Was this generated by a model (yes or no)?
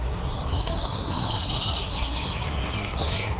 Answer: yes